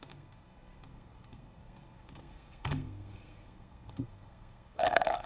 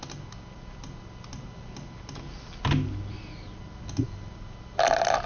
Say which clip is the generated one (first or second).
first